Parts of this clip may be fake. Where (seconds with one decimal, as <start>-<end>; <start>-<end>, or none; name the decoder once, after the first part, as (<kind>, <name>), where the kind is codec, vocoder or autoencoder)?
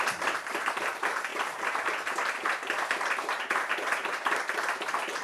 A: 1.3-4.4 (vocoder, BigVGAN v2)